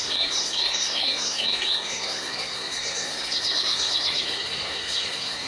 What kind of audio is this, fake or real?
fake